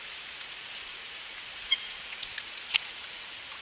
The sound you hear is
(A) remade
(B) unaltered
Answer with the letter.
A